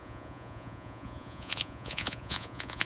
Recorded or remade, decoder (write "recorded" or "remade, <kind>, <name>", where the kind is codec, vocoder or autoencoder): remade, vocoder, Vocos